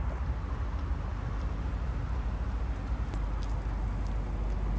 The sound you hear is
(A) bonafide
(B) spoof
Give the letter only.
A